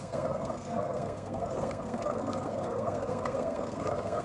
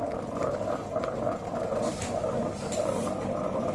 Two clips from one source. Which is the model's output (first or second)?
first